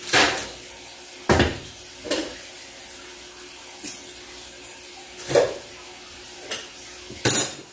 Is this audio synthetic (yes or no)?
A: no